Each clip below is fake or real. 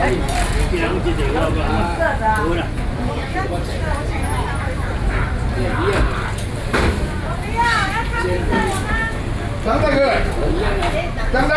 real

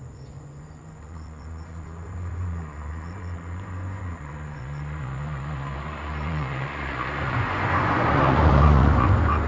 fake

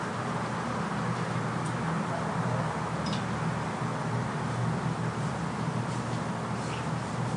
real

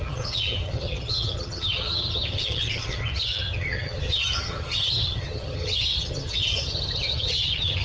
fake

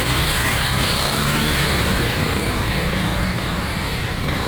fake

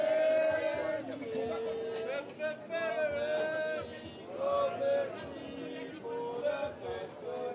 real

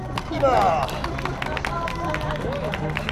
real